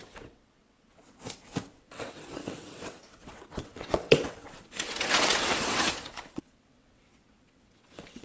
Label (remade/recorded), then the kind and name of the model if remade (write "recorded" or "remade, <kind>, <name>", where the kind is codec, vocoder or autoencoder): remade, vocoder, WaveNeXt